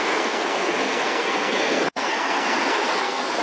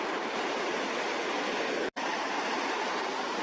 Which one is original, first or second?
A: second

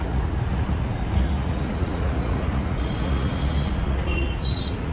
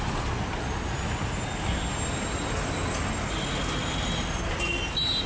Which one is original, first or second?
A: second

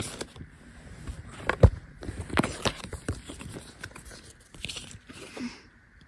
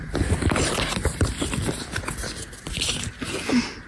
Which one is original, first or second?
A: second